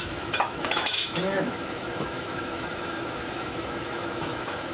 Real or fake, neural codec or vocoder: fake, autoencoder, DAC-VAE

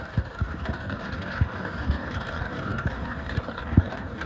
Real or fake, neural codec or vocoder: fake, codec, DAC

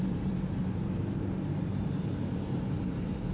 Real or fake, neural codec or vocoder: fake, vocoder, BigVGAN v2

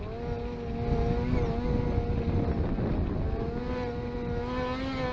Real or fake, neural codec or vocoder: real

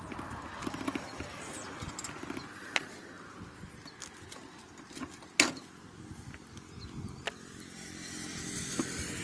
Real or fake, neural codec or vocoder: real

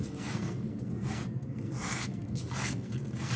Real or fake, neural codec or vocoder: fake, codec, SNAC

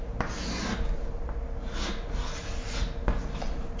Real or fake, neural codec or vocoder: real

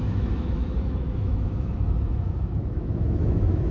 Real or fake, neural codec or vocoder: fake, autoencoder, DAC-VAE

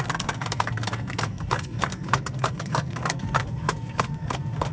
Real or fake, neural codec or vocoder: fake, codec, SNAC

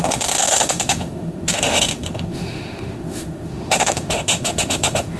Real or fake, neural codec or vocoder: fake, autoencoder, DAC-VAE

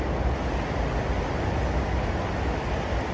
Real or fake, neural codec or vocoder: real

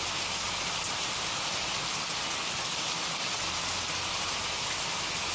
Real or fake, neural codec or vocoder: real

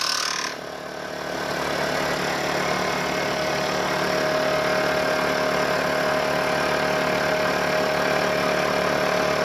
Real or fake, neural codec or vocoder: real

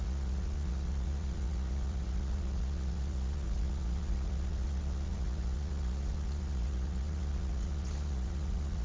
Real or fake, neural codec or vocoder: fake, vocoder, Vocos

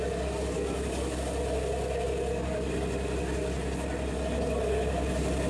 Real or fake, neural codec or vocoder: real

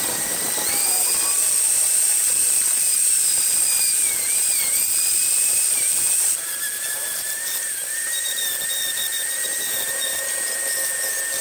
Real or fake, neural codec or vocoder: fake, vocoder, BigVGAN v2